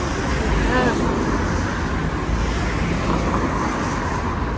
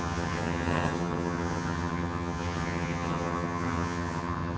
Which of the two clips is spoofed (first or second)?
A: second